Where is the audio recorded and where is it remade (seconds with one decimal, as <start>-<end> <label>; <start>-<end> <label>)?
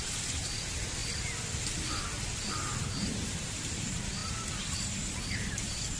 0.0-1.0 remade; 1.0-2.4 recorded; 2.4-6.0 remade